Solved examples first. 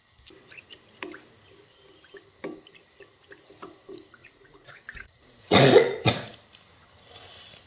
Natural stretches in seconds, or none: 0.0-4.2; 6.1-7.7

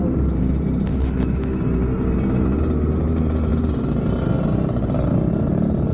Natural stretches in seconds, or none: 0.0-0.9; 1.6-5.9

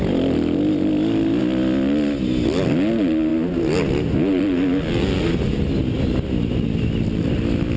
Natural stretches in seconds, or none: 0.0-7.8

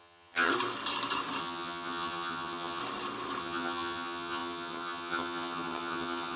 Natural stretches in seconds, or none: 0.5-1.4; 2.8-3.4